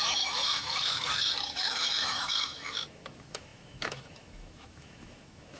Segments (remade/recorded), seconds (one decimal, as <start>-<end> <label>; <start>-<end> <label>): 0.0-5.6 remade